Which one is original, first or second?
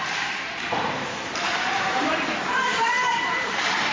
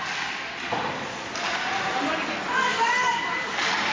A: second